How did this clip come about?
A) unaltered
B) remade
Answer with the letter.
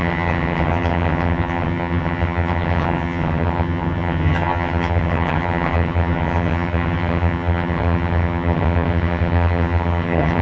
B